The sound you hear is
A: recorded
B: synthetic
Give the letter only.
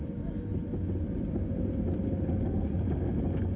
A